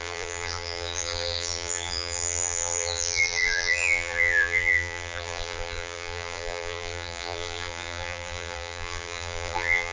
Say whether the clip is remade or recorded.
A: remade